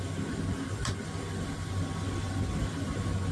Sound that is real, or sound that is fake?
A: real